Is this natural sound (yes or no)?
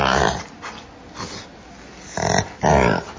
yes